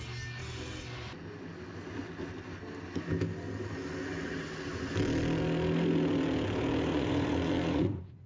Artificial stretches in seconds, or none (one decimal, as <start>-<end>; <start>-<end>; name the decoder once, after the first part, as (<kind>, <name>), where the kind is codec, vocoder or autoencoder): 6.9-8.3 (vocoder, Vocos)